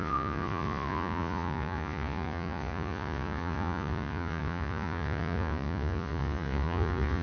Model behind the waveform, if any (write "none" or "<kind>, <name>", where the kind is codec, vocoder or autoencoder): vocoder, Vocos